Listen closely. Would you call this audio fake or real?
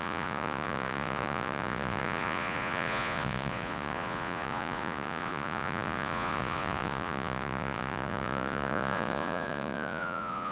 fake